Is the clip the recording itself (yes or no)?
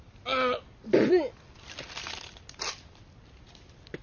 yes